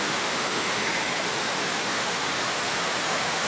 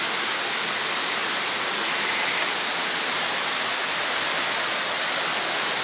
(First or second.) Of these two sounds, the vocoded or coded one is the first